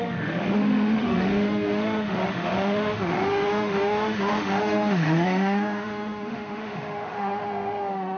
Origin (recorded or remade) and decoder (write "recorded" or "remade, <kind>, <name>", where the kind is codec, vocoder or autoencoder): remade, autoencoder, DAC-VAE